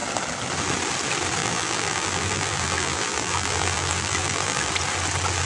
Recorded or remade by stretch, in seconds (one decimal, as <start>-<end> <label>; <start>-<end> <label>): 0.0-1.4 recorded; 1.4-4.7 remade; 4.7-5.5 recorded